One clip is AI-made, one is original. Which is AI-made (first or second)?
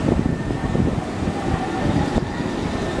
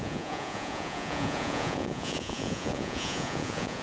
second